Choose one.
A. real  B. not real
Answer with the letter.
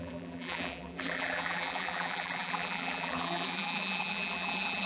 B